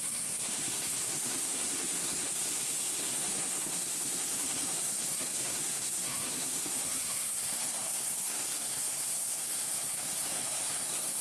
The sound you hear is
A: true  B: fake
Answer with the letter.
B